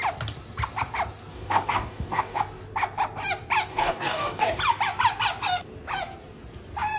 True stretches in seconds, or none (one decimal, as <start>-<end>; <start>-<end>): 0.0-1.3; 2.4-3.7; 4.6-7.0